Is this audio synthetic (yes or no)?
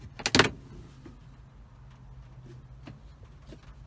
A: no